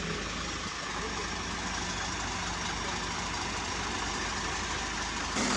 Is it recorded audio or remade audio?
recorded